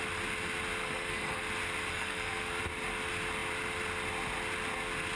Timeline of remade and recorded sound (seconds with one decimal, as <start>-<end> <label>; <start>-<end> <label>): 0.0-0.8 recorded; 0.8-1.4 remade; 1.4-1.9 recorded; 1.9-2.6 remade; 2.6-5.2 recorded